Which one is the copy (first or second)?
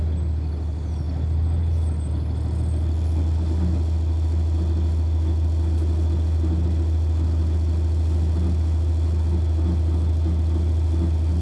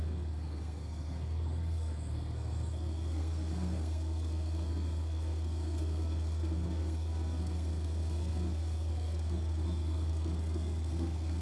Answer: second